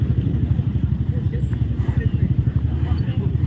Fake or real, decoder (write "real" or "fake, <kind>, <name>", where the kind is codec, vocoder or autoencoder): fake, vocoder, BigVGAN v2